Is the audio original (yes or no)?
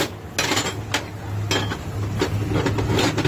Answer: yes